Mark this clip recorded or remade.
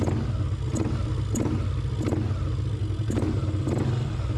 recorded